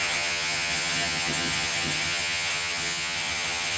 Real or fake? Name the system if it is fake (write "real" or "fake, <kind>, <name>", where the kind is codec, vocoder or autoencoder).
fake, vocoder, HiFi-GAN